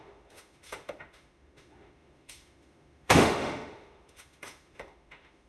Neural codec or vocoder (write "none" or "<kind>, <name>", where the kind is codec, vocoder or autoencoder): autoencoder, DAC-VAE